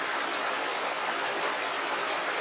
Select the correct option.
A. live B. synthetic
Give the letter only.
A